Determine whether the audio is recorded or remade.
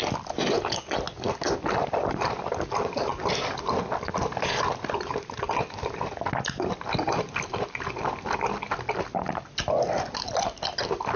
recorded